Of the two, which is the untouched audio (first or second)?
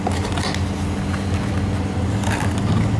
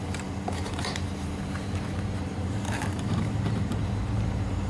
first